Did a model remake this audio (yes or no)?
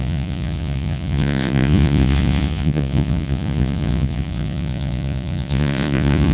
yes